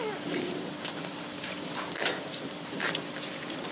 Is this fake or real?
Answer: real